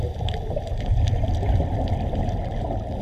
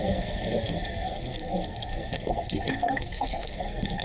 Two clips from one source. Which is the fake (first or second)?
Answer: second